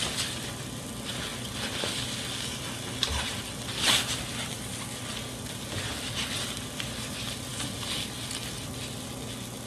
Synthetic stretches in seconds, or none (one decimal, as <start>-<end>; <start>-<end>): none